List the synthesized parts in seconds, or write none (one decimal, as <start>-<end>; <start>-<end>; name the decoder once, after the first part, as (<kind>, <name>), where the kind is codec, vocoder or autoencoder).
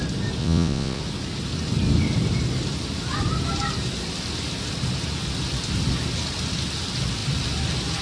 0.4-1.0 (vocoder, Vocos)